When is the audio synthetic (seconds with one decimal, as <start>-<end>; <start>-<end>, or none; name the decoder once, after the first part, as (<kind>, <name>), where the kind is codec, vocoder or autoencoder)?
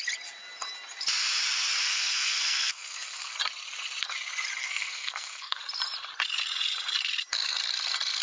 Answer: 1.8-3.3 (codec, SNAC); 4.6-5.6